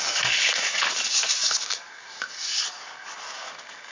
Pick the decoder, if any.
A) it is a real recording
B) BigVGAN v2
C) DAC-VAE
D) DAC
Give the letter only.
D